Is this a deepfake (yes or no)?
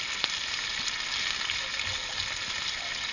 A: no